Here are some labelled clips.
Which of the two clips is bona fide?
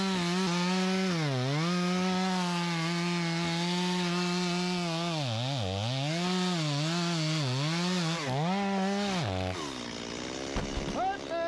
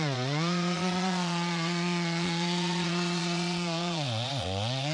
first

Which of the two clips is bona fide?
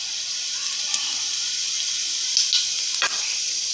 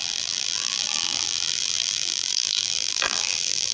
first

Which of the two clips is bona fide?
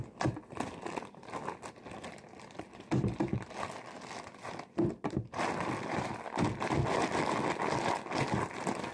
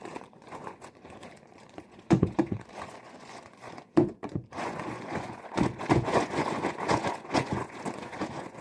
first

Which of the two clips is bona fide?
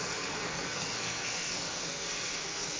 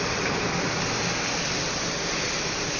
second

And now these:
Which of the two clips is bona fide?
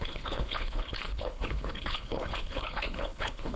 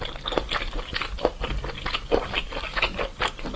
second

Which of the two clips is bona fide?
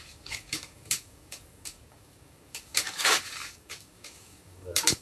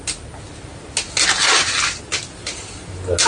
second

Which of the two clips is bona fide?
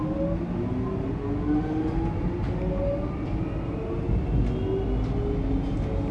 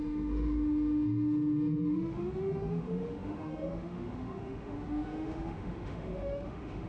first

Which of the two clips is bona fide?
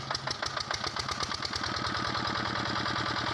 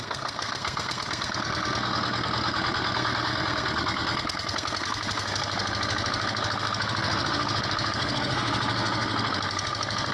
first